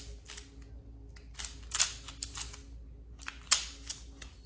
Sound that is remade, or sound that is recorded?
recorded